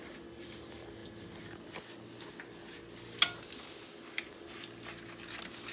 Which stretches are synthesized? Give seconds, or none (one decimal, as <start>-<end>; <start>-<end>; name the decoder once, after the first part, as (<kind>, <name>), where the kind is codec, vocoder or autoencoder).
none